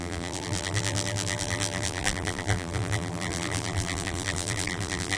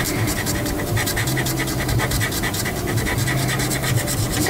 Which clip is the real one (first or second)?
second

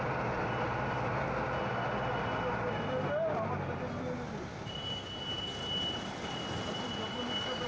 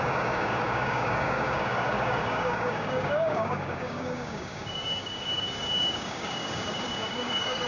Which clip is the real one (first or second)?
first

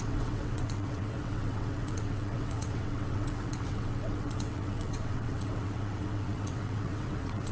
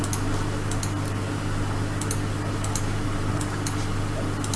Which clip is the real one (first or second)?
second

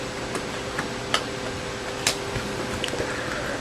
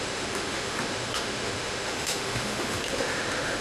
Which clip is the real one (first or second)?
first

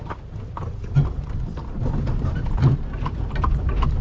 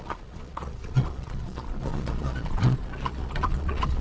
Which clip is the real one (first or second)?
first